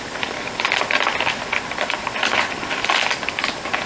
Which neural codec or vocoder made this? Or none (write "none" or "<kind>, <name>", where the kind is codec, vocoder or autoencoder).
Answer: vocoder, BigVGAN v2